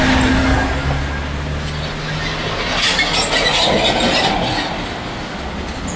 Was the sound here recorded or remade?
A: recorded